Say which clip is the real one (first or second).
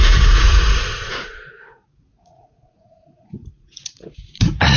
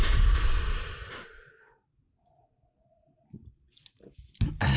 second